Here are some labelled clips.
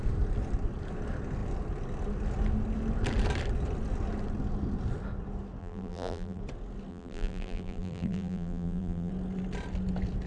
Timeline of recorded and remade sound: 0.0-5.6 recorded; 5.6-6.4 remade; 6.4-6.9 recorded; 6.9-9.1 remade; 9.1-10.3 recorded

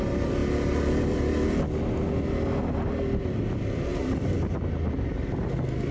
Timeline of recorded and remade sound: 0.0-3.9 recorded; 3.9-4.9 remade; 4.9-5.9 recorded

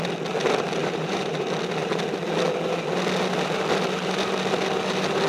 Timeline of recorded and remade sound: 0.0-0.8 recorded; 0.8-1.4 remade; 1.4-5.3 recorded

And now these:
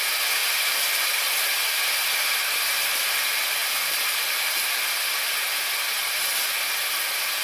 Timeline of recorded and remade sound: 0.0-0.4 recorded; 0.4-3.1 remade; 3.1-3.6 recorded; 3.6-4.9 remade; 4.9-7.4 recorded

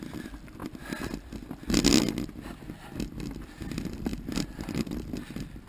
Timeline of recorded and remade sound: 0.0-0.6 remade; 0.6-4.0 recorded; 4.0-5.7 remade

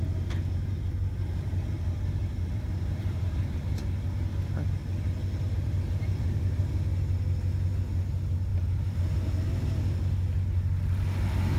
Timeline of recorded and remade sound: 0.0-3.6 remade; 3.6-5.3 recorded; 5.3-6.7 remade; 6.7-8.5 recorded; 8.5-9.0 remade; 9.0-11.6 recorded